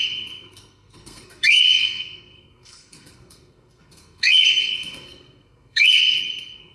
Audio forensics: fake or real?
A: fake